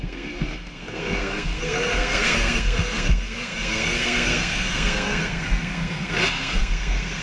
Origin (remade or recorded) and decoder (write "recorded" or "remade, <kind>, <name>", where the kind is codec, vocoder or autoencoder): remade, codec, SNAC